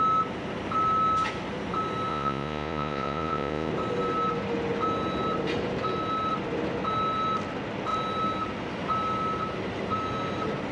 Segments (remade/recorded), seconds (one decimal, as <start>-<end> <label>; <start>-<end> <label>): 0.0-2.1 recorded; 2.1-3.7 remade; 3.7-10.7 recorded

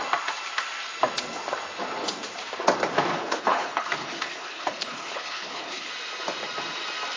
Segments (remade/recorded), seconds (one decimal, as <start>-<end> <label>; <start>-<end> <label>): 0.0-3.1 recorded; 3.1-5.9 remade; 5.9-7.2 recorded

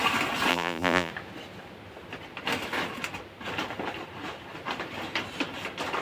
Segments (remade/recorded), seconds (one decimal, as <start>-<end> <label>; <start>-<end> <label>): 0.0-0.5 recorded; 0.5-1.1 remade; 1.1-6.0 recorded

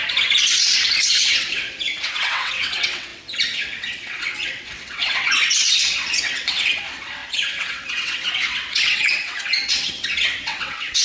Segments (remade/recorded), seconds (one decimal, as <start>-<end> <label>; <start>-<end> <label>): 0.0-1.0 recorded; 1.0-11.0 remade

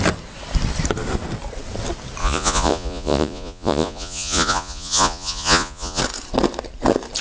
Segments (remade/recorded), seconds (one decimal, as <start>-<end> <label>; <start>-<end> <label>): 0.0-2.2 recorded; 2.2-6.0 remade; 6.0-7.2 recorded